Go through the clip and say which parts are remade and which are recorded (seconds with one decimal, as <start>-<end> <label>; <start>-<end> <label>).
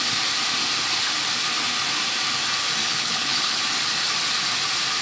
0.0-2.8 recorded; 2.8-3.6 remade; 3.6-5.0 recorded